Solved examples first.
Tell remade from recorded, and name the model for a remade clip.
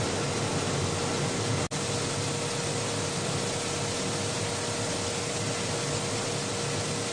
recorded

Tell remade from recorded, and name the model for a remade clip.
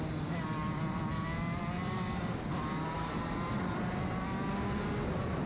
recorded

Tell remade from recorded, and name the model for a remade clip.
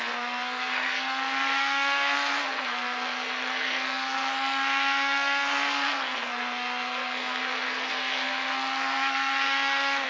remade, codec, SNAC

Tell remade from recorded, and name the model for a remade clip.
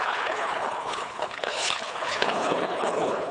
remade, codec, HILCodec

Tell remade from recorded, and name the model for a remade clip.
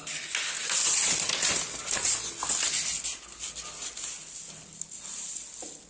recorded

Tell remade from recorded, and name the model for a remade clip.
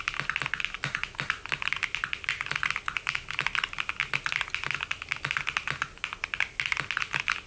recorded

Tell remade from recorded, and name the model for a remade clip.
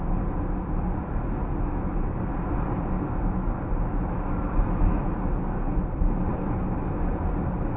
recorded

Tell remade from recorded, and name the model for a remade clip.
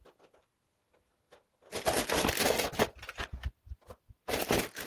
recorded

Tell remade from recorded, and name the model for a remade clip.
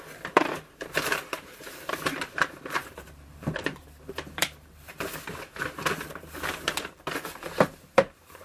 remade, vocoder, BigVGAN v2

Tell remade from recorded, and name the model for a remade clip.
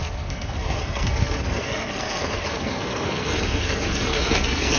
remade, codec, SNAC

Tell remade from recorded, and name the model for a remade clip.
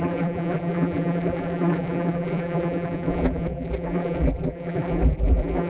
remade, vocoder, BigVGAN v2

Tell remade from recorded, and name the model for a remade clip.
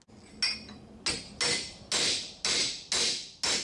recorded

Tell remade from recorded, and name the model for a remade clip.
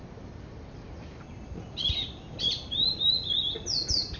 recorded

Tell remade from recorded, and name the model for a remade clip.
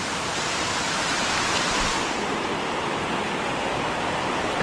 remade, vocoder, BigVGAN v2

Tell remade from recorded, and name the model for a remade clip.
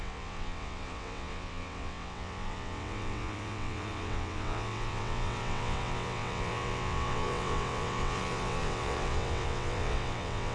remade, vocoder, WaveNeXt